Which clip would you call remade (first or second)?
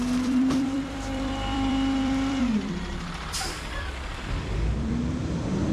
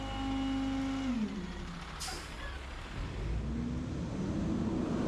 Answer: first